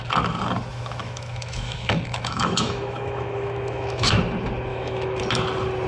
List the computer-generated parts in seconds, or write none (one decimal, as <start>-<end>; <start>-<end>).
0.7-4.2; 4.7-5.2